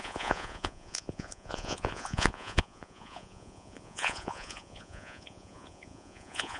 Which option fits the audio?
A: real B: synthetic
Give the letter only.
B